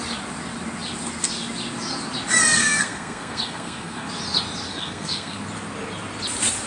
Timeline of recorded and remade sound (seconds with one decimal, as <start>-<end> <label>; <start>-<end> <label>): 0.0-2.6 recorded; 2.6-4.1 remade; 4.1-4.7 recorded; 4.7-5.4 remade; 5.4-6.7 recorded